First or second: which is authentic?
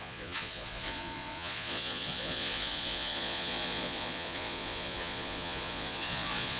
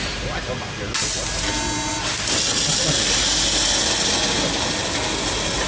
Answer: second